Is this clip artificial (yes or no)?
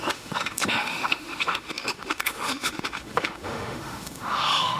yes